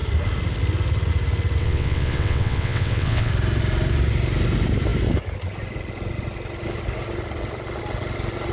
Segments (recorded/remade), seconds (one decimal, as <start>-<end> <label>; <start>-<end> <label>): 0.0-1.6 recorded; 1.6-3.3 remade; 3.3-8.5 recorded